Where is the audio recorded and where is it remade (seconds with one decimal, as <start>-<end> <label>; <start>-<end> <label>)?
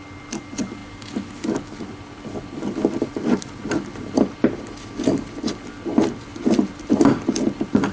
0.0-7.9 recorded